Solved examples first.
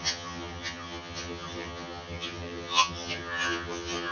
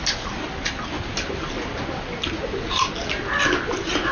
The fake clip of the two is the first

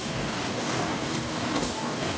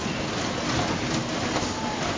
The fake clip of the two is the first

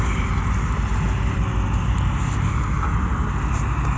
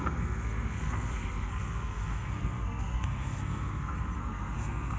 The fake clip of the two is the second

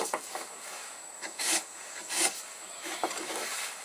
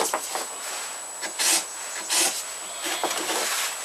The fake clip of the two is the first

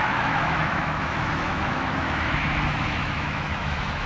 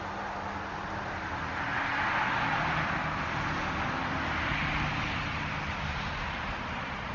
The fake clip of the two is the first